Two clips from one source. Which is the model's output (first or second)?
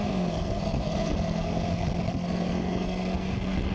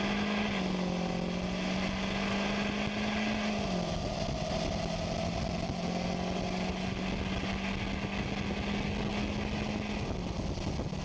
first